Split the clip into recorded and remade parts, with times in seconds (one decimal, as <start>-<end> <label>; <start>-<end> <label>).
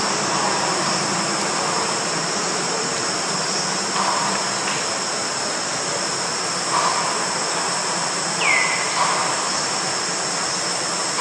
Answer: 0.0-11.2 recorded